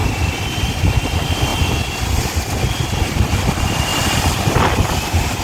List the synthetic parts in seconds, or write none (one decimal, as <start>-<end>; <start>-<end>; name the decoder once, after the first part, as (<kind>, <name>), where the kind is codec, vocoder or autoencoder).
none

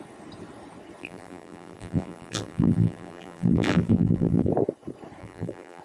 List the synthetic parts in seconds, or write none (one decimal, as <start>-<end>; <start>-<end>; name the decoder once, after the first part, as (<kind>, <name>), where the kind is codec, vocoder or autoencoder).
1.0-4.5 (vocoder, BigVGAN v2); 5.2-5.8

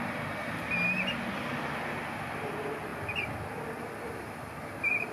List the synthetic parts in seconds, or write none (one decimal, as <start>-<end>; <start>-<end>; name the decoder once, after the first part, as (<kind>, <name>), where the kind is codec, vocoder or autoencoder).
none

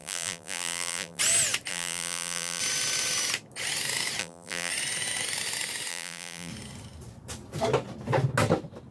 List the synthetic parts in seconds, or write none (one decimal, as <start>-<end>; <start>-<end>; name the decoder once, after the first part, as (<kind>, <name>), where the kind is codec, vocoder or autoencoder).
0.0-1.2 (vocoder, BigVGAN v2); 1.7-2.6; 4.2-4.7; 5.9-6.5

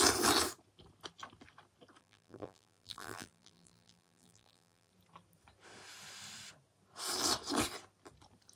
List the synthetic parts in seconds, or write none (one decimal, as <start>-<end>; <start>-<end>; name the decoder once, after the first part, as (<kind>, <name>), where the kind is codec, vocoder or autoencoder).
2.0-4.9 (vocoder, BigVGAN v2)

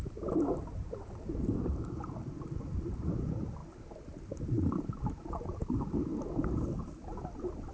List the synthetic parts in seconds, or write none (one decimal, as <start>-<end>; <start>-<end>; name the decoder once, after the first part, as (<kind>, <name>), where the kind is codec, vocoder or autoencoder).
0.0-3.6 (vocoder, BigVGAN v2); 5.3-7.7

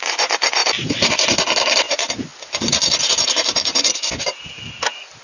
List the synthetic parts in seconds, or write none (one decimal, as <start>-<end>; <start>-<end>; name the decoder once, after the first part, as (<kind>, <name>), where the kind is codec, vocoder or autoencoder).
0.6-1.1 (vocoder, BigVGAN v2)

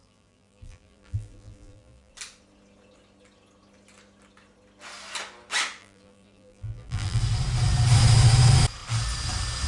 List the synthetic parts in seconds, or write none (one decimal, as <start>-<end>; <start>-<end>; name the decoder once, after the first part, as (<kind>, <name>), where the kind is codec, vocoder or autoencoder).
0.0-2.1 (vocoder, BigVGAN v2); 5.8-7.2